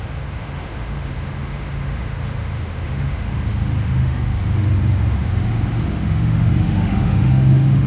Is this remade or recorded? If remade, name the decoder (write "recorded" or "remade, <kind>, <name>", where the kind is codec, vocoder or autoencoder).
remade, autoencoder, DAC-VAE